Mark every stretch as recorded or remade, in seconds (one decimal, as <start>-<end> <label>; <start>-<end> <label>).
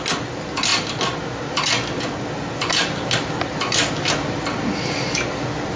0.0-5.8 recorded